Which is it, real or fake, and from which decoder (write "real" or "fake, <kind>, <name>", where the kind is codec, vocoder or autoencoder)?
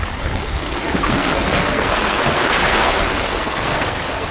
fake, codec, SNAC